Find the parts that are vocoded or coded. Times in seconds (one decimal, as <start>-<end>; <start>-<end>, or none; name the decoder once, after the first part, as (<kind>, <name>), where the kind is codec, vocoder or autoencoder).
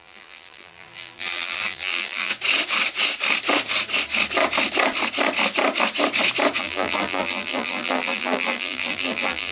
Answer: 0.0-2.3 (vocoder, BigVGAN v2); 6.6-9.5